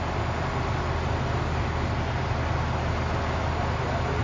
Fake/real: real